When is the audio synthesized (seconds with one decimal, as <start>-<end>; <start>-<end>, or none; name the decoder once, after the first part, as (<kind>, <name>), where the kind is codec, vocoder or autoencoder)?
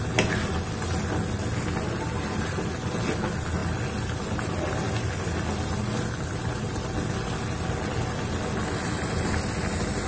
none